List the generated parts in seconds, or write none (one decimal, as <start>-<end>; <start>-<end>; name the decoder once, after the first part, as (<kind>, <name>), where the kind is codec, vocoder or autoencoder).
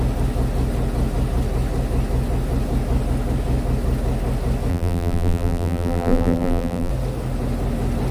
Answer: 4.7-6.9 (vocoder, BigVGAN v2)